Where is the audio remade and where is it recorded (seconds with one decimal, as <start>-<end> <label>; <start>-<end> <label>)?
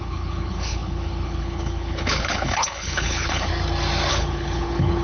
0.0-3.5 remade; 3.5-4.1 recorded; 4.1-5.0 remade